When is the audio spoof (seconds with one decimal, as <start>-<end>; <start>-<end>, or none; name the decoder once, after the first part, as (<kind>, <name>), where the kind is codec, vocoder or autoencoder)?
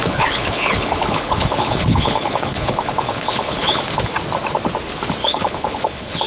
0.0-3.8 (codec, HILCodec); 5.2-6.3